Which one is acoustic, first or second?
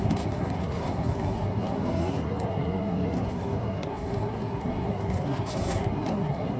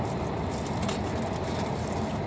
second